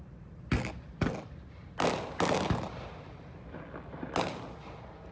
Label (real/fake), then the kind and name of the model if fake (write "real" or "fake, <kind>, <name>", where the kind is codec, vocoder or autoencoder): real